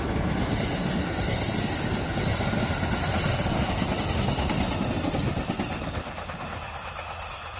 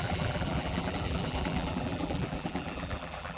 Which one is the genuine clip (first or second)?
first